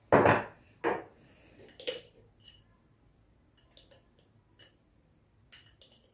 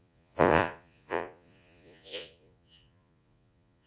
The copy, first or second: second